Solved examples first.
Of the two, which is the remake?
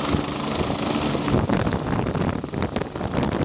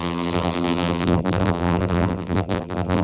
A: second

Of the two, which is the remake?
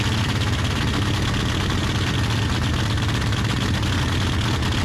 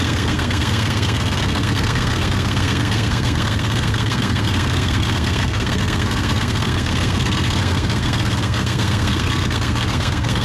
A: second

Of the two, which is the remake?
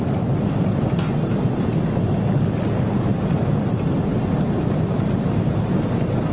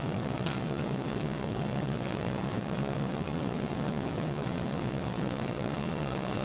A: second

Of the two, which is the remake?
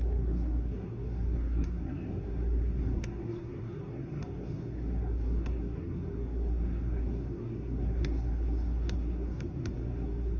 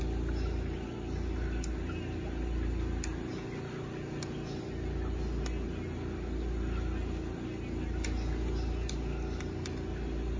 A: first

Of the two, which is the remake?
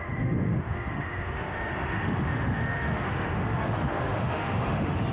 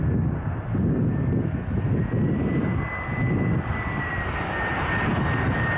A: first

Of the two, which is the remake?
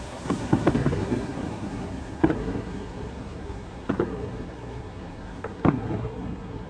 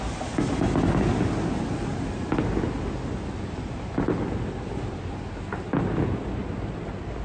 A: first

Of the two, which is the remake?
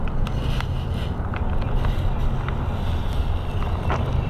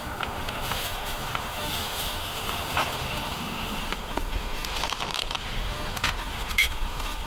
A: second